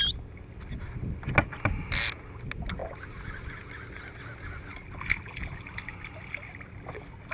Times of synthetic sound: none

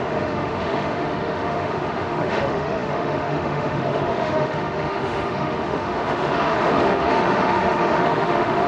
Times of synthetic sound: 0.0-8.7

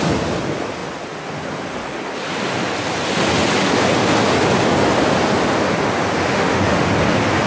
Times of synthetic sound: 6.3-6.9